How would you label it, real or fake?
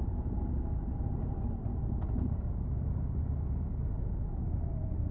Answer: real